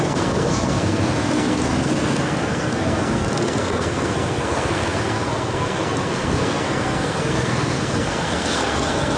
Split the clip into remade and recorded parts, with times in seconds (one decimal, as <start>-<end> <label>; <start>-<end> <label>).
0.0-9.2 remade